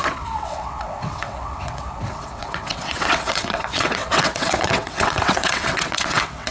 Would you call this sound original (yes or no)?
no